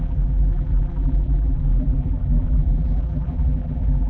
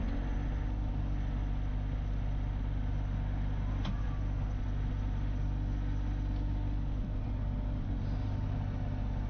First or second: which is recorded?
second